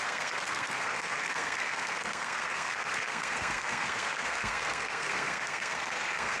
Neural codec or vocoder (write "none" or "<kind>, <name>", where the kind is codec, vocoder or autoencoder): codec, SNAC